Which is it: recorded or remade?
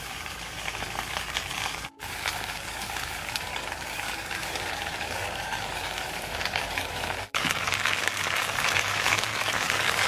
remade